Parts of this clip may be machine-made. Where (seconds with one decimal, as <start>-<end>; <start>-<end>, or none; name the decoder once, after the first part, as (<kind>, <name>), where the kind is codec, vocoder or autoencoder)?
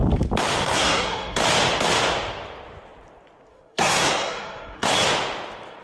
0.6-1.4 (codec, SNAC); 3.5-4.9